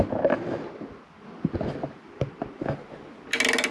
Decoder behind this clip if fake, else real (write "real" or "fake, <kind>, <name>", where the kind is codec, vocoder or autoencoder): real